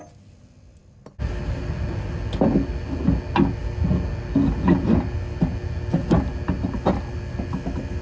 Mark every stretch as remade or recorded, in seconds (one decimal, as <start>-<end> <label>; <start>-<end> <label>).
0.0-8.0 recorded